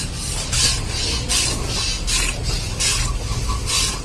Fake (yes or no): no